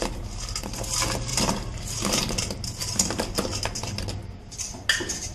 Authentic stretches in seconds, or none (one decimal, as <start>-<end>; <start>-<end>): 0.0-1.3; 2.2-2.8; 3.4-5.3